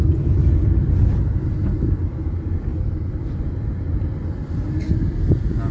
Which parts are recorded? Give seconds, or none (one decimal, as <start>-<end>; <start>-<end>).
0.0-5.7